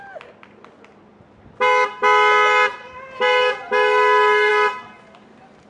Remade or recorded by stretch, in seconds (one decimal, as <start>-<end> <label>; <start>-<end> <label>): 0.0-5.7 recorded